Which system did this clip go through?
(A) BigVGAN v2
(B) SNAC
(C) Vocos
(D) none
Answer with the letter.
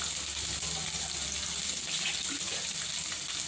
D